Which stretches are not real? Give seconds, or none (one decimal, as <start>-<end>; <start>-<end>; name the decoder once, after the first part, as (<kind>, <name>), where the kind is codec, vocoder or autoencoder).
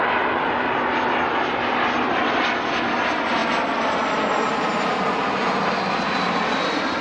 none